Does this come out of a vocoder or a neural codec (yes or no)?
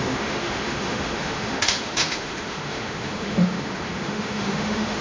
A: yes